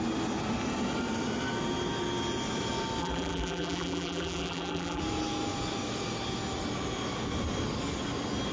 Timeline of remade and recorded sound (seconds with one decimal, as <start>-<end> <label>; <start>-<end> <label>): 0.0-3.0 recorded; 3.0-5.0 remade; 5.0-8.5 recorded